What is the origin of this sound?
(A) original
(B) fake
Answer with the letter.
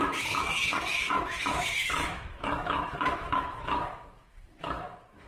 B